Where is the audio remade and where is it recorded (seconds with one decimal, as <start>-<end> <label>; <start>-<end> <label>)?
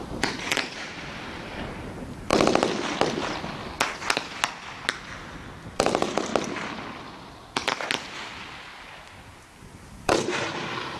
0.0-2.3 remade; 2.3-5.6 recorded; 5.6-6.3 remade; 6.3-9.6 recorded; 9.6-11.0 remade